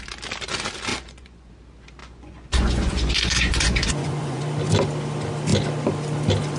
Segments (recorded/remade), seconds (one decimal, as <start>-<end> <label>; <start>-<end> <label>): 0.0-0.9 recorded; 0.9-1.5 remade; 1.5-2.0 recorded; 2.0-4.4 remade; 4.4-6.6 recorded

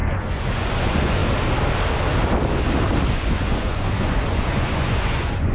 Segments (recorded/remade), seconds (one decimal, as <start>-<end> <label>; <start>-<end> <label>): 0.0-1.2 remade; 1.2-3.1 recorded; 3.1-5.5 remade

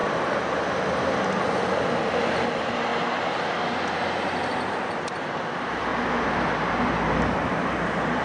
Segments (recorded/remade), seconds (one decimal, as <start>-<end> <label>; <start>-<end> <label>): 0.0-1.1 recorded; 1.1-2.9 remade; 2.9-4.4 recorded; 4.4-8.2 remade

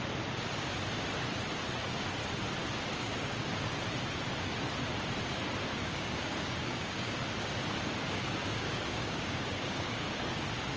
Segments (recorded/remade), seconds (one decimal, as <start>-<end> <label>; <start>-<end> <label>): 0.0-2.9 recorded; 2.9-3.7 remade; 3.7-5.7 recorded; 5.7-7.2 remade; 7.2-8.4 recorded; 8.4-10.0 remade; 10.0-10.8 recorded

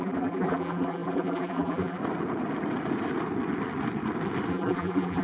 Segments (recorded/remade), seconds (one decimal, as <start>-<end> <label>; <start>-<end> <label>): 0.0-2.0 remade; 2.0-4.5 recorded; 4.5-5.2 remade

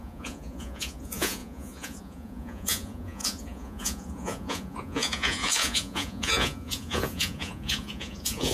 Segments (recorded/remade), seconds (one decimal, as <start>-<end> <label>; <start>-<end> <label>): 0.0-8.5 remade

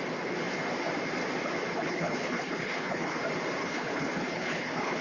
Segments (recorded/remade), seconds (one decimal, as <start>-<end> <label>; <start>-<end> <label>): 0.0-1.7 recorded; 1.7-3.2 remade; 3.2-3.6 recorded; 3.6-5.0 remade

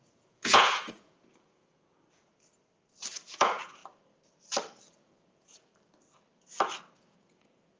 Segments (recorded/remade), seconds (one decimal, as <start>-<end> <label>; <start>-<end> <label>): 0.0-2.3 remade; 2.3-3.1 recorded; 3.1-3.8 remade; 3.8-5.0 recorded; 5.0-5.7 remade; 5.7-7.0 recorded; 7.0-7.8 remade